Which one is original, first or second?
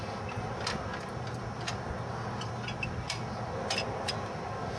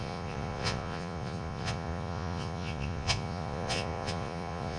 first